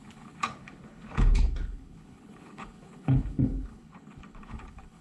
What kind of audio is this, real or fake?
fake